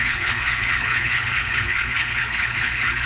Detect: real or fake fake